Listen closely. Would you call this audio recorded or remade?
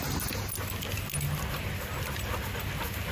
recorded